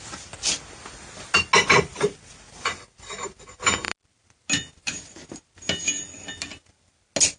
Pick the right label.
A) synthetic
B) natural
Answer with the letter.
B